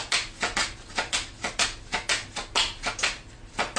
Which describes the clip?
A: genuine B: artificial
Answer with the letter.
A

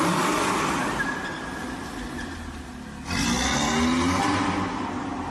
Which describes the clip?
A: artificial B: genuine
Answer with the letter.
B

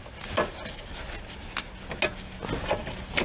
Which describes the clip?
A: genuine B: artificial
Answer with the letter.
A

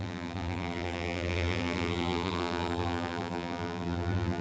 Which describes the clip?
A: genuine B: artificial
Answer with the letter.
B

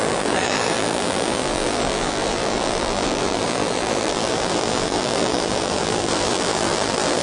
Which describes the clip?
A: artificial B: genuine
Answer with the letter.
A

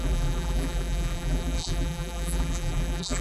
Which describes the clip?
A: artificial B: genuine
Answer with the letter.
A